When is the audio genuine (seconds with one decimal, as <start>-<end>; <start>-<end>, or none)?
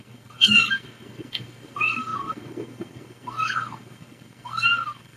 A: none